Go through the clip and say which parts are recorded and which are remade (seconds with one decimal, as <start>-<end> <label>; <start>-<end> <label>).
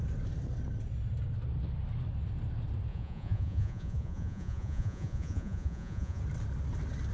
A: 0.0-2.9 recorded; 2.9-6.2 remade; 6.2-7.1 recorded